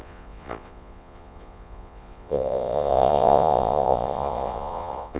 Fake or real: fake